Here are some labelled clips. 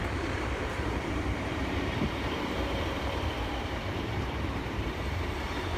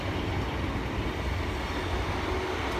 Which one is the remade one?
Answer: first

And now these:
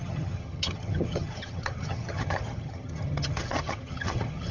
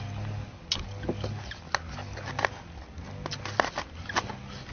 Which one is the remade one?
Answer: first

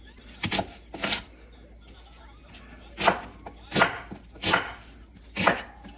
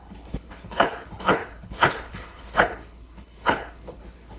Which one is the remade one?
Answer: second